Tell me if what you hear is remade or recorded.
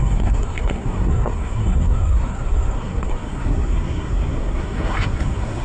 remade